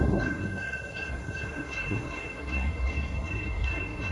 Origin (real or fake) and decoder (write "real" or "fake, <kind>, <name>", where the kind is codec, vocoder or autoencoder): fake, codec, SNAC